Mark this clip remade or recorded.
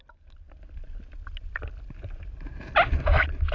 recorded